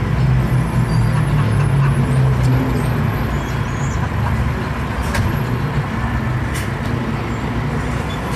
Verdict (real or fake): real